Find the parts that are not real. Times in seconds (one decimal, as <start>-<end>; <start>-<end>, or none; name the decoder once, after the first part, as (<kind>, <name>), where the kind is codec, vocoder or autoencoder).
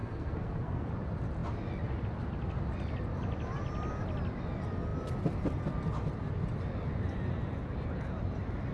0.0-0.9 (codec, SNAC)